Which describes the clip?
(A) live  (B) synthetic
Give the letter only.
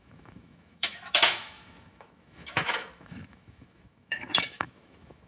B